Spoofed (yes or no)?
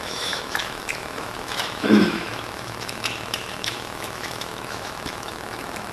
yes